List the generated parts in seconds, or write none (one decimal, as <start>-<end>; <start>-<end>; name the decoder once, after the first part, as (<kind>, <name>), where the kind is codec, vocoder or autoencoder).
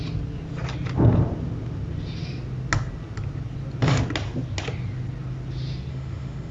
5.9-6.5 (autoencoder, DAC-VAE)